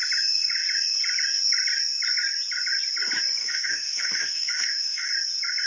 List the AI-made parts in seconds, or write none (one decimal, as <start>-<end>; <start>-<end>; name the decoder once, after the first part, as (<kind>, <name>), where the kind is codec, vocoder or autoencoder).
3.4-5.1 (autoencoder, DAC-VAE)

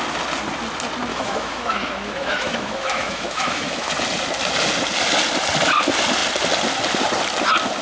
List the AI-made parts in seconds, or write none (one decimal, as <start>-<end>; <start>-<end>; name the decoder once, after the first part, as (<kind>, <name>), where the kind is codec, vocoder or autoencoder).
1.1-3.9 (autoencoder, DAC-VAE)

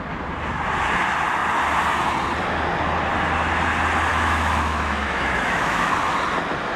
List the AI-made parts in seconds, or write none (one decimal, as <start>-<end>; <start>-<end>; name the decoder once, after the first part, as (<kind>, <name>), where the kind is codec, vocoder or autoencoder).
4.1-5.9 (autoencoder, DAC-VAE)